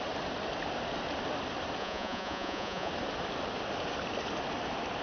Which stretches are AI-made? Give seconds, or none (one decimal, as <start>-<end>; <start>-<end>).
1.8-2.9